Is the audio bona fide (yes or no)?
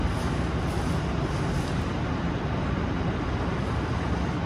yes